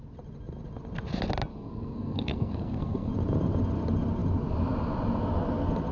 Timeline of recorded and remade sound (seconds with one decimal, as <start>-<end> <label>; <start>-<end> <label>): 0.0-1.5 recorded; 1.5-3.1 remade; 3.1-5.9 recorded